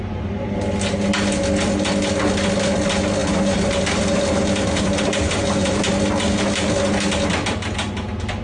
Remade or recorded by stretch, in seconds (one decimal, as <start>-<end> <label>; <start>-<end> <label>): 0.0-3.2 recorded; 3.2-5.8 remade; 5.8-8.4 recorded